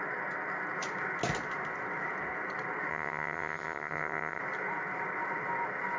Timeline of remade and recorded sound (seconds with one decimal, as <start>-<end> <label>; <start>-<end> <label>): 0.0-2.9 recorded; 2.9-4.4 remade; 4.4-6.0 recorded